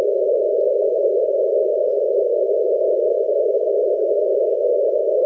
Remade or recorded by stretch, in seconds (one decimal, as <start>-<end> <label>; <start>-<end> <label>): 0.0-5.3 recorded